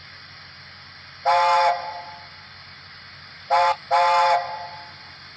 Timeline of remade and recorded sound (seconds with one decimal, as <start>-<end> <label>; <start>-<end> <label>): 0.0-3.2 recorded; 3.2-3.8 remade; 3.8-5.4 recorded